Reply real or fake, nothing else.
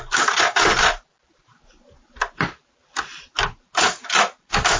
real